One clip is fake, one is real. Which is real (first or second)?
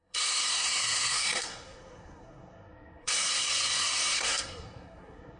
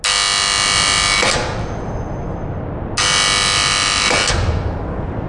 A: second